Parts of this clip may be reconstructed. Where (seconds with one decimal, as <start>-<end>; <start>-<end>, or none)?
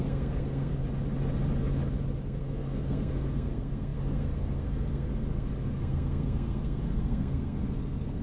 0.0-0.8; 2.2-8.2